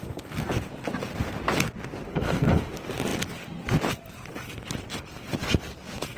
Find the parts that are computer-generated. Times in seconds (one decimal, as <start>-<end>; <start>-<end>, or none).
2.1-2.6